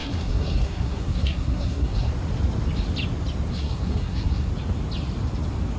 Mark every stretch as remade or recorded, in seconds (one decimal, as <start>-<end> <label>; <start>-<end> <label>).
0.0-2.1 remade; 2.1-3.5 recorded; 3.5-4.5 remade; 4.5-5.8 recorded

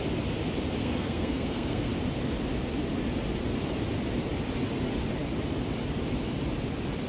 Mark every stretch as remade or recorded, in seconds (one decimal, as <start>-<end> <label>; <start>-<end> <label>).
0.0-0.8 recorded; 0.8-1.9 remade; 1.9-7.1 recorded

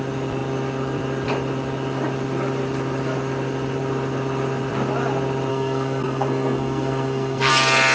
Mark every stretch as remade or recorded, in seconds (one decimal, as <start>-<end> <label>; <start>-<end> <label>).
0.0-5.5 recorded; 5.5-7.5 remade; 7.5-7.9 recorded